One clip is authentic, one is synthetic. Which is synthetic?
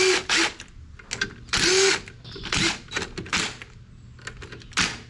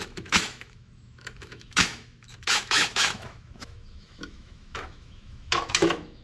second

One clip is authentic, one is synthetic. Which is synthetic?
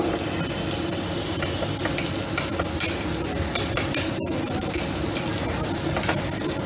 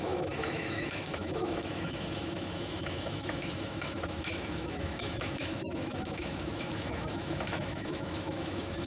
second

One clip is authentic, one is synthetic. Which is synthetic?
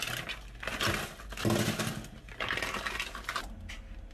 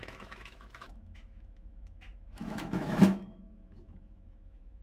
second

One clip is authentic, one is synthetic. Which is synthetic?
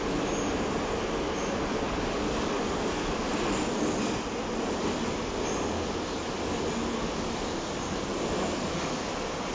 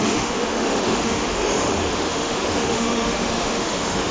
second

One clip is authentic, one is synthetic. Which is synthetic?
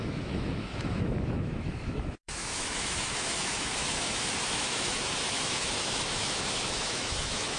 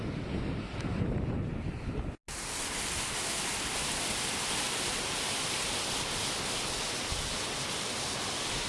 first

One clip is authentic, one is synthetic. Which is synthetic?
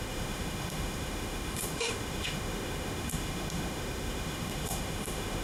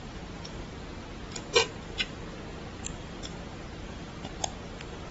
first